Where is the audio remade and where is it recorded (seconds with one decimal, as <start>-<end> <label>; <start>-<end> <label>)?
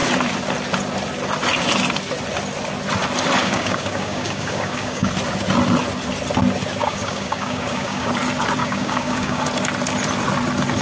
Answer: 0.0-3.4 recorded; 3.4-5.1 remade; 5.1-6.8 recorded; 6.8-8.1 remade; 8.1-8.6 recorded; 8.6-9.4 remade; 9.4-10.8 recorded